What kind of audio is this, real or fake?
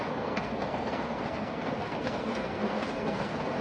fake